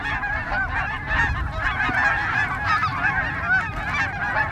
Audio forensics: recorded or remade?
recorded